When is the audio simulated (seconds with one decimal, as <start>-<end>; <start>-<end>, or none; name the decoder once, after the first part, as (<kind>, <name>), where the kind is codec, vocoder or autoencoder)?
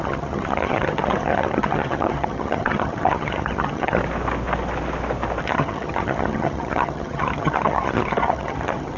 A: 0.0-4.0 (vocoder, HiFi-GAN); 5.4-9.0